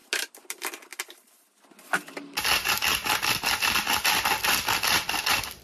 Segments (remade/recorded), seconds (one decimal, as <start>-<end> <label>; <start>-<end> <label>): 0.0-0.5 recorded; 0.5-0.9 remade; 0.9-3.3 recorded; 3.3-5.6 remade